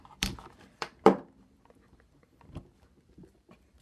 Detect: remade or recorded remade